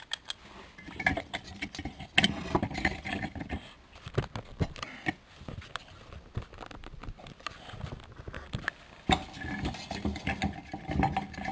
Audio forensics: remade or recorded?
recorded